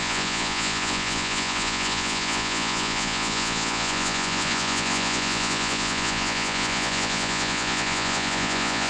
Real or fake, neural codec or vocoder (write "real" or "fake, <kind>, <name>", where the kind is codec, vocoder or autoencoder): fake, vocoder, Vocos